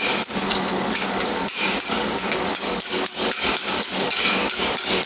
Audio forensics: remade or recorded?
remade